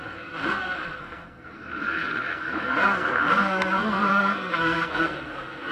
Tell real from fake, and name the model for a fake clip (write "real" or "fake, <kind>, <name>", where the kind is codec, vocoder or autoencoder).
fake, codec, SNAC